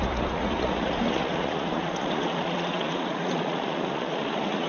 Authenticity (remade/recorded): remade